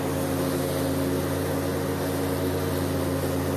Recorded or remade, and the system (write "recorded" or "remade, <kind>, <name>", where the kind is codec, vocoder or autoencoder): recorded